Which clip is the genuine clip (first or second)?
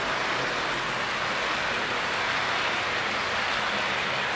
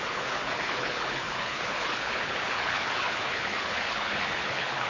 first